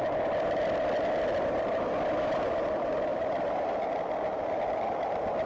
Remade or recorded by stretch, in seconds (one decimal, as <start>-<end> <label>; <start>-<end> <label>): 0.0-5.5 recorded